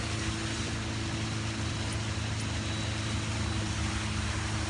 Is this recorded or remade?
recorded